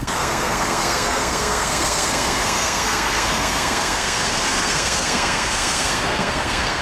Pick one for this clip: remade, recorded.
remade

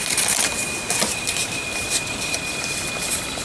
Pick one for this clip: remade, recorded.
recorded